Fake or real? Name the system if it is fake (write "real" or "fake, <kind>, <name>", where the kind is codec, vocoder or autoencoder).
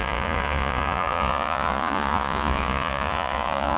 fake, vocoder, Vocos